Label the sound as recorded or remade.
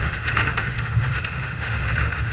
remade